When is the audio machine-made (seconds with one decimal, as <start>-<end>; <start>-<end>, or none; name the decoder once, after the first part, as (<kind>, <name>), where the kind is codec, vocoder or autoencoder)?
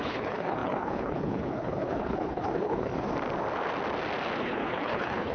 0.0-2.9 (codec, HILCodec); 4.4-5.3